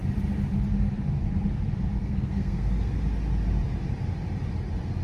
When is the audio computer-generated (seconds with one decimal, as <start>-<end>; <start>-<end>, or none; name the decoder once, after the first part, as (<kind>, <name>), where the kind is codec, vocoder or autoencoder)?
2.0-2.9 (codec, SNAC)